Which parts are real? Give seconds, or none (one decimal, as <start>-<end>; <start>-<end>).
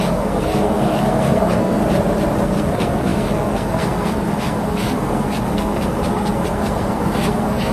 1.8-2.4